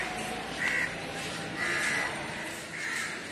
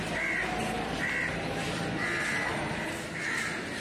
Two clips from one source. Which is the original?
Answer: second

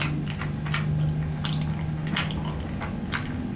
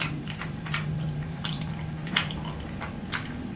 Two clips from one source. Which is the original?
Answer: first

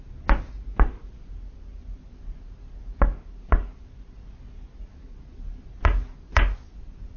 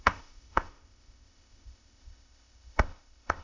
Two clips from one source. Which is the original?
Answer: first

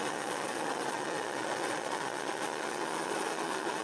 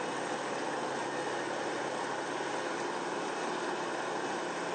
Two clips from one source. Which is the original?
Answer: second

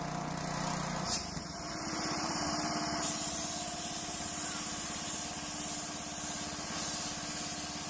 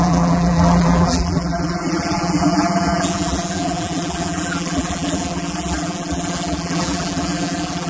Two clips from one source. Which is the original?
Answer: first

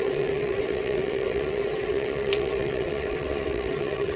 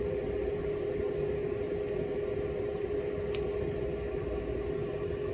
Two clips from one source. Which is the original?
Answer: second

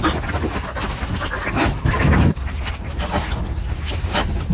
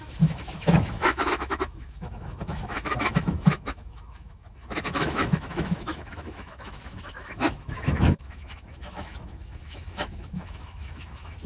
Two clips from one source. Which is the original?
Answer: first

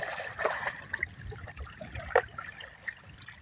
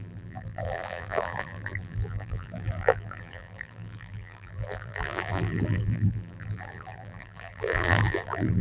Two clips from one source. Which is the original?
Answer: first